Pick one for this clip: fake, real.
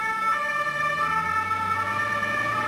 real